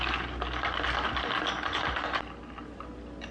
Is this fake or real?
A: real